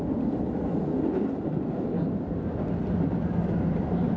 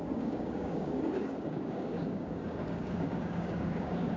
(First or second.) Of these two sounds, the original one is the first